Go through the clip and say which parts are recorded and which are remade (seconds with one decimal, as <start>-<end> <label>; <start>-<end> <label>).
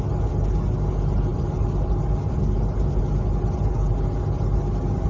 0.0-1.3 recorded; 1.3-3.0 remade; 3.0-5.1 recorded